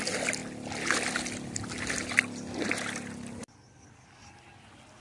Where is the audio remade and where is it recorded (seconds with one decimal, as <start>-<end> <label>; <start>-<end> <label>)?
0.0-5.0 recorded